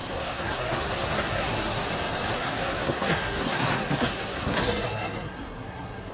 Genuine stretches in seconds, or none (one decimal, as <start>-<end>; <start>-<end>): 1.9-2.3